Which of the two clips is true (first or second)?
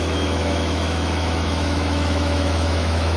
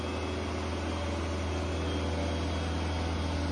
second